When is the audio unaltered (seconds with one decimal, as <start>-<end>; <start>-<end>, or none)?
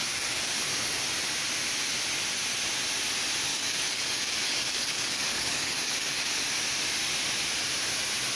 0.6-3.5; 6.4-8.4